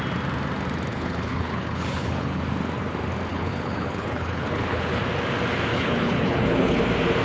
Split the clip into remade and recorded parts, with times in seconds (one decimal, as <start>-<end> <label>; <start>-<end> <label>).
0.0-0.9 recorded; 0.9-2.4 remade; 2.4-3.3 recorded; 3.3-5.0 remade; 5.0-5.7 recorded; 5.7-6.8 remade; 6.8-7.2 recorded